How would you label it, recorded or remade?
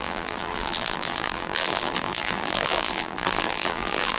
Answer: remade